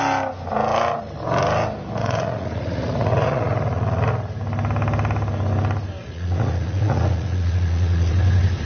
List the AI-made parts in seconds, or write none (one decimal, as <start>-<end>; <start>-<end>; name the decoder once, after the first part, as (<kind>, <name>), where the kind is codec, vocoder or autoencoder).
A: 2.0-4.1 (vocoder, Vocos); 6.0-8.1